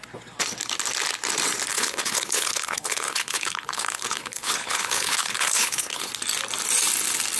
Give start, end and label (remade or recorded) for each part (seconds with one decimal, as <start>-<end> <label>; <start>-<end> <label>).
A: 0.0-1.7 recorded; 1.7-6.1 remade; 6.1-7.4 recorded